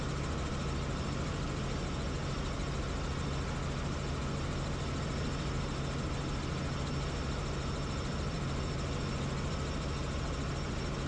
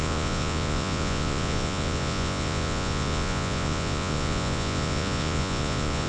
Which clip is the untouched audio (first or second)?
first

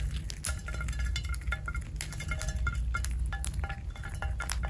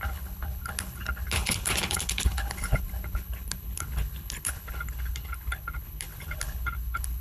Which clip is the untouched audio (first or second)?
first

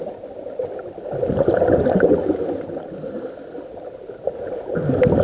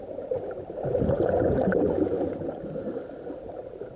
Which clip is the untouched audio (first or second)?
first